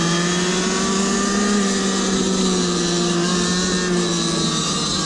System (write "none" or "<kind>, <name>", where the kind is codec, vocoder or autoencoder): none